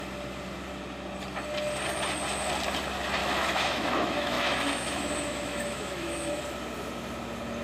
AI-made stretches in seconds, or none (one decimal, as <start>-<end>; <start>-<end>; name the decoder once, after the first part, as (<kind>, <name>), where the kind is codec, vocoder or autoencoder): 3.2-6.4 (autoencoder, DAC-VAE)